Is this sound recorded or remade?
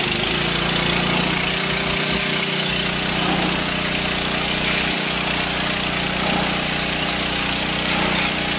recorded